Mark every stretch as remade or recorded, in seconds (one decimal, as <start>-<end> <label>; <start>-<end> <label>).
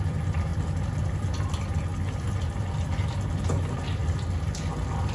0.0-5.1 recorded